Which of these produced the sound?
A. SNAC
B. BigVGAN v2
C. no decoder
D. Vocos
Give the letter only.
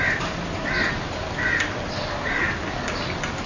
C